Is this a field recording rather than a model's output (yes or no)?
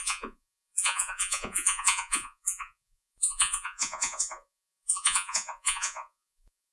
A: no